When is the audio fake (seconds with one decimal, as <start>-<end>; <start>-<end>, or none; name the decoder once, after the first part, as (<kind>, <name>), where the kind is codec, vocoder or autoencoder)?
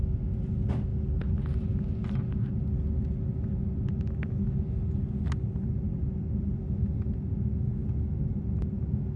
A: none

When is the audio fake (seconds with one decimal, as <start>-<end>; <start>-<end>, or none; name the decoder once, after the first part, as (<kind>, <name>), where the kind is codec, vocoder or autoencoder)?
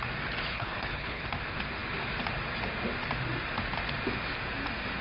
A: 0.5-1.2 (codec, HILCodec)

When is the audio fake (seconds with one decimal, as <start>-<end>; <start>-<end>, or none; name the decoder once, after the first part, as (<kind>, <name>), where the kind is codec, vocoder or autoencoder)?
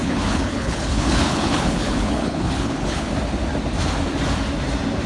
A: 0.0-3.1 (codec, HILCodec)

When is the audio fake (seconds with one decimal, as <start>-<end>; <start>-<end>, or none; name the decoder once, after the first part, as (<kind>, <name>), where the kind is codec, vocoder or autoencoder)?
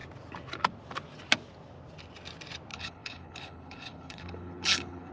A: 2.7-5.1 (codec, HILCodec)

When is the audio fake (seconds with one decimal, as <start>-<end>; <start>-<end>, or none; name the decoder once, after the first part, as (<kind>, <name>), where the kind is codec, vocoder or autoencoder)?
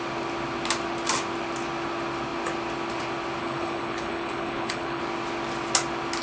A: 3.4-5.0 (codec, HILCodec)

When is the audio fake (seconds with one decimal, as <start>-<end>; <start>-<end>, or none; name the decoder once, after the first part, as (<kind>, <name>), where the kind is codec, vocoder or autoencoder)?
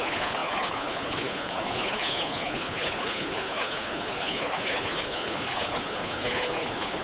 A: 0.0-7.0 (codec, HILCodec)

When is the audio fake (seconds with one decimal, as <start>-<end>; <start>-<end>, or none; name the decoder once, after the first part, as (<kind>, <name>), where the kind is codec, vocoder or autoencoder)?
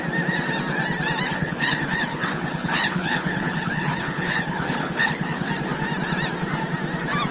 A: 1.3-5.5 (codec, HILCodec)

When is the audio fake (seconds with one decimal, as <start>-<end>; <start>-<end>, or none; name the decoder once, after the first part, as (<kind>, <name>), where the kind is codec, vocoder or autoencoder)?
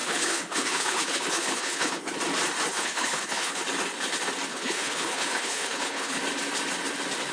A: 0.0-2.0 (codec, HILCodec); 2.7-3.6; 4.5-6.2